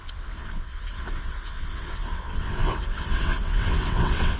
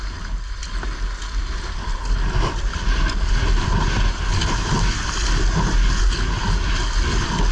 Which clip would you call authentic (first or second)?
second